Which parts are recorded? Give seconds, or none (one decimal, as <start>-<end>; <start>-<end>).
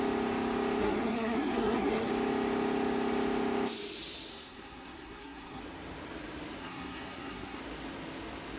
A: 0.0-0.8; 2.1-4.3; 5.6-6.6; 7.6-8.6